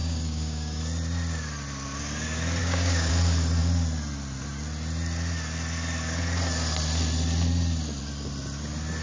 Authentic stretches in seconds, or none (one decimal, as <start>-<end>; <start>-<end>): 0.8-2.6; 3.1-9.0